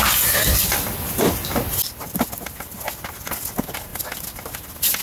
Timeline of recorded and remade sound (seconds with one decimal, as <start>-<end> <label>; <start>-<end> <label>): 0.0-5.0 recorded

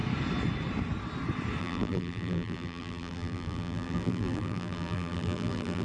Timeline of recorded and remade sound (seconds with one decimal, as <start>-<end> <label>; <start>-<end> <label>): 0.0-1.6 recorded; 1.6-5.8 remade

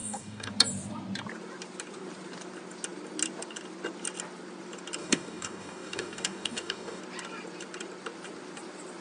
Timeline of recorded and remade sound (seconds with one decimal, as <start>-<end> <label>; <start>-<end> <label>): 0.0-0.5 remade; 0.5-5.0 recorded; 5.0-7.0 remade; 7.0-9.0 recorded

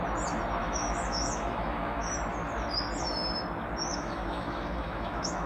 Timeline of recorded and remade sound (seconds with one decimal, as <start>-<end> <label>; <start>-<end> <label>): 0.0-0.6 recorded; 0.6-2.0 remade; 2.0-3.9 recorded; 3.9-5.5 remade